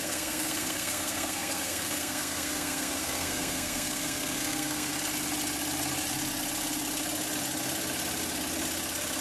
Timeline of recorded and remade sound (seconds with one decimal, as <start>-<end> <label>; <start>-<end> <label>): 0.0-4.9 remade; 4.9-9.2 recorded